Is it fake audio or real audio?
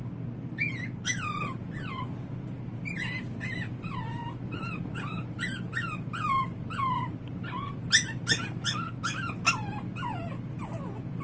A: real